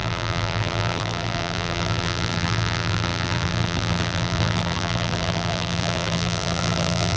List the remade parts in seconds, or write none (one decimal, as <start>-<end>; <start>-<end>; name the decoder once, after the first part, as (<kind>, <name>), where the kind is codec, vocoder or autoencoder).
0.0-7.2 (vocoder, BigVGAN v2)

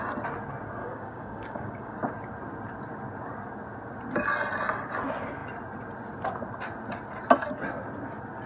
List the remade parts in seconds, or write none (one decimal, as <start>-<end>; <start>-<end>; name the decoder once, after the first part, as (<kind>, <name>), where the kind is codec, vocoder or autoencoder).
0.8-2.0 (codec, DAC)

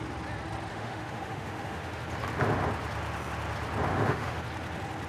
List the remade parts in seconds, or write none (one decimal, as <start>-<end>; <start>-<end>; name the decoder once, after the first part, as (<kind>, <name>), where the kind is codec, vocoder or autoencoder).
0.7-2.0 (autoencoder, DAC-VAE); 3.9-4.4

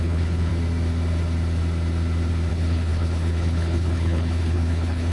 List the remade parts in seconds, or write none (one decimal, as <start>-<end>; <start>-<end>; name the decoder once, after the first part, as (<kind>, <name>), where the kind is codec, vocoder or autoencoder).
0.0-0.5 (codec, HILCodec); 2.5-5.1

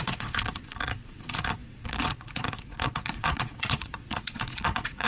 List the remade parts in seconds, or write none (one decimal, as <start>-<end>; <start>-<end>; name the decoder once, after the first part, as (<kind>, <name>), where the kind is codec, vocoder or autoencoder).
0.0-5.1 (vocoder, Vocos)